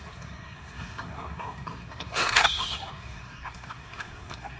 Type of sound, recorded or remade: remade